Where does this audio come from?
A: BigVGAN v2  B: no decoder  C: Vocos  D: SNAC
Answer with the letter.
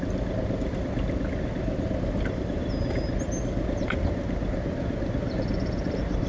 B